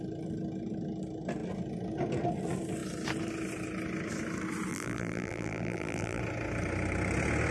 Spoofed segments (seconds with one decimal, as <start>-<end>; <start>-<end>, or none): 4.7-6.2